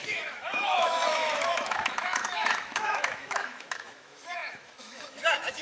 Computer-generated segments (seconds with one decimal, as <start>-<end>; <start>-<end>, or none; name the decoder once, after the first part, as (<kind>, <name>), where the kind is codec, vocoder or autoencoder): 0.0-5.6 (autoencoder, DAC-VAE)

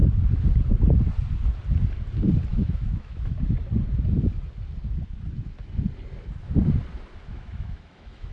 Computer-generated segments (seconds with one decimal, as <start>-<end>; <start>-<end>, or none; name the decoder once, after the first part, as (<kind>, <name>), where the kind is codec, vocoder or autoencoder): 2.5-3.3 (autoencoder, DAC-VAE); 7.3-8.3

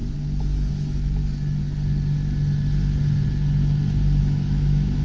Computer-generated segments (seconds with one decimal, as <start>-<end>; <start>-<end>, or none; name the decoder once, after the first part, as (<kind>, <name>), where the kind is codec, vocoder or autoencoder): 0.7-1.2 (autoencoder, DAC-VAE); 4.2-5.0